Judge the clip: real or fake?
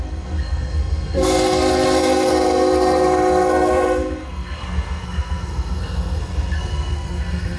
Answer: fake